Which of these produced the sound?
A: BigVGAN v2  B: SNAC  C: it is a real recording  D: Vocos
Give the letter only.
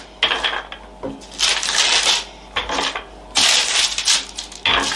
C